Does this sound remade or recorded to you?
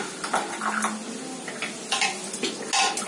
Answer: recorded